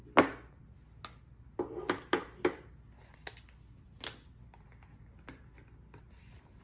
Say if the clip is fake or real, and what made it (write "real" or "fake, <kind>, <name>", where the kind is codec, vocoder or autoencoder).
real